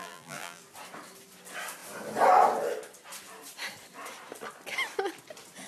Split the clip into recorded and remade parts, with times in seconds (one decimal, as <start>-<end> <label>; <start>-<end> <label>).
0.0-0.6 remade; 0.6-5.7 recorded